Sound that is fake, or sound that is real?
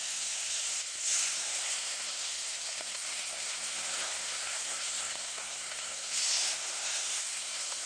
fake